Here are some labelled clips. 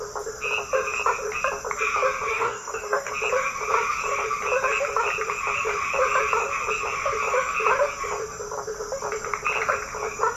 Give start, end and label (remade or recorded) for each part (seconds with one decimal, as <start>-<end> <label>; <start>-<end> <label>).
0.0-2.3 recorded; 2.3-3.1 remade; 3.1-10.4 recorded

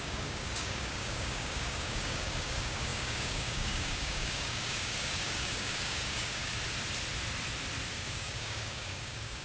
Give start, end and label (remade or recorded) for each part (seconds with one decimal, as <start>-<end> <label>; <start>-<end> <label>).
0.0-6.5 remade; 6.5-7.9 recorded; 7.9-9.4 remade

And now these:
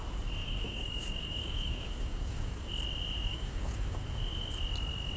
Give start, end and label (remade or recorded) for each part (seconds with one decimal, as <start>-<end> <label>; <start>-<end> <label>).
0.0-0.4 recorded; 0.4-2.7 remade; 2.7-3.3 recorded; 3.3-4.0 remade; 4.0-5.2 recorded

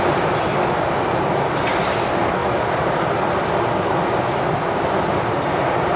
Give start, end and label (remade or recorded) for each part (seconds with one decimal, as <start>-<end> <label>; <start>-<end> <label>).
0.0-6.0 recorded

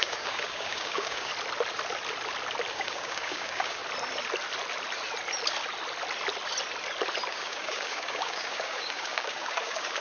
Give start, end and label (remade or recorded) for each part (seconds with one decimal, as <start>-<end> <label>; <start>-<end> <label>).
0.0-1.3 remade; 1.3-2.7 recorded; 2.7-3.8 remade; 3.8-7.3 recorded; 7.3-10.0 remade

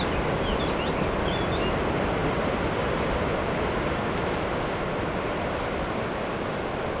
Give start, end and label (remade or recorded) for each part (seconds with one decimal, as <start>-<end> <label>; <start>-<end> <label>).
0.0-7.0 recorded

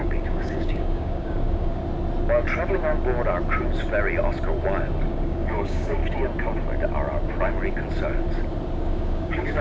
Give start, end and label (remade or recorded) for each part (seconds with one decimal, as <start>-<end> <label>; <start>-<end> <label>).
0.0-1.8 remade; 1.8-5.1 recorded; 5.1-6.0 remade; 6.0-8.8 recorded; 8.8-9.6 remade